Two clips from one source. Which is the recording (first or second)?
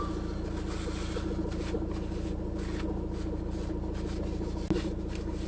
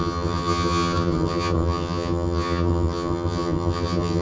first